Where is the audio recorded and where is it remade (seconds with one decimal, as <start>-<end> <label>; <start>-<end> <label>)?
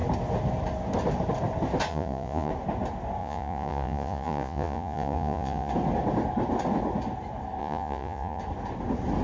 0.0-1.9 recorded; 1.9-2.5 remade; 2.5-3.2 recorded; 3.2-5.7 remade; 5.7-7.6 recorded; 7.6-8.4 remade; 8.4-9.2 recorded